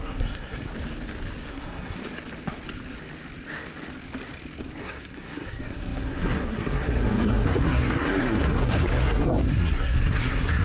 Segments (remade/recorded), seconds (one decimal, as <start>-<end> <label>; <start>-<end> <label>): 0.0-0.7 remade; 0.7-1.5 recorded; 1.5-2.0 remade; 2.0-4.8 recorded; 4.8-10.6 remade